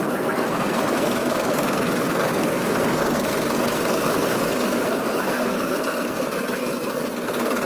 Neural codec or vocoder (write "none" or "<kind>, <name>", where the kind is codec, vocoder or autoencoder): codec, SNAC